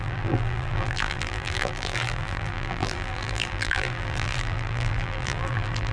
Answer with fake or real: fake